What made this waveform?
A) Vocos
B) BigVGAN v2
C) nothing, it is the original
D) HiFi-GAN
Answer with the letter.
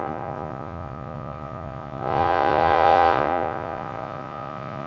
A